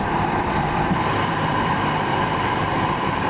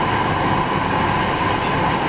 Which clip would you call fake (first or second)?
first